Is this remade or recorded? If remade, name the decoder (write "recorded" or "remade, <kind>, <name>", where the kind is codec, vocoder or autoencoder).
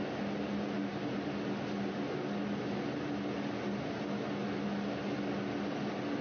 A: recorded